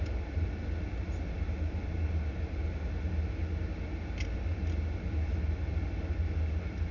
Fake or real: real